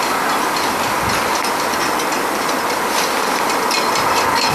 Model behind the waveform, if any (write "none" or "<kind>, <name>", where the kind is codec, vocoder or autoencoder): none